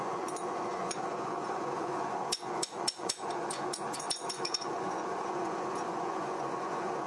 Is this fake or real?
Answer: fake